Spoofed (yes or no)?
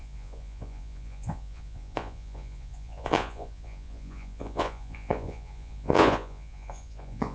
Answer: yes